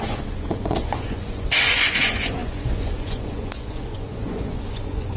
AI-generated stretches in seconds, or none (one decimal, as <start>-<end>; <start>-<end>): 0.0-5.2